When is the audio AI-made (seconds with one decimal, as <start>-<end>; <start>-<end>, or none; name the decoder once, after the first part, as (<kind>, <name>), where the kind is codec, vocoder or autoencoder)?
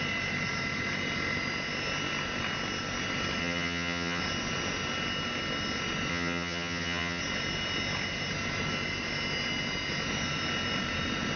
3.4-4.2 (vocoder, HiFi-GAN); 6.1-7.2